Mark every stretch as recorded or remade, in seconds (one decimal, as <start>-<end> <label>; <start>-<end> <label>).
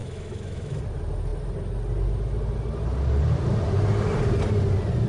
0.0-0.8 remade; 0.8-5.1 recorded